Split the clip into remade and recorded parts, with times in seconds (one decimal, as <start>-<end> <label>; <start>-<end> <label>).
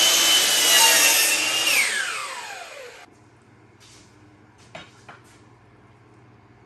0.0-6.7 recorded